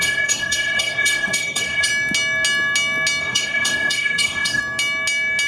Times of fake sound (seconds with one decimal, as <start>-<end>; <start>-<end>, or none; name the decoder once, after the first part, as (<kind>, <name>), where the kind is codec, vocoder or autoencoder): 0.0-1.9 (codec, SNAC); 3.2-4.6